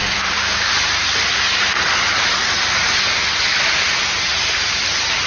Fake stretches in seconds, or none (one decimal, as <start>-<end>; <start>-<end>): 0.0-0.7